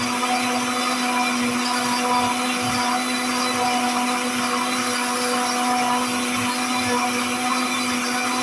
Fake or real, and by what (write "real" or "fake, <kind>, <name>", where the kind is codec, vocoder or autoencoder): real